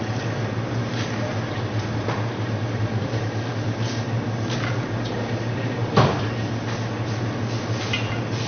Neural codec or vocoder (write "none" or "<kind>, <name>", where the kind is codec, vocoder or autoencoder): none